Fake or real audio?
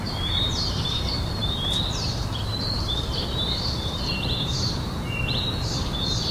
fake